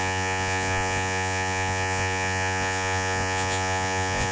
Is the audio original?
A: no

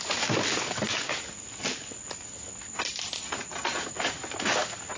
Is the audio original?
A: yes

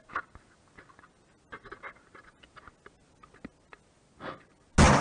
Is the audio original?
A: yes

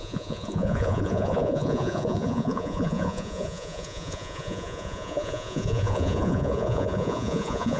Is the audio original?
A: no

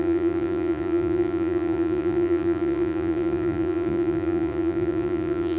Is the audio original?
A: no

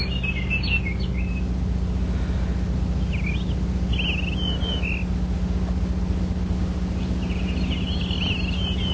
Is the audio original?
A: yes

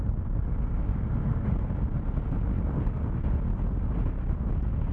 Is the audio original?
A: yes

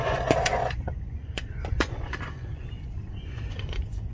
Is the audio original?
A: no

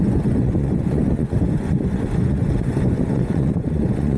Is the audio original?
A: no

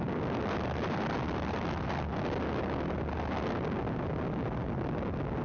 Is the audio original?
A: yes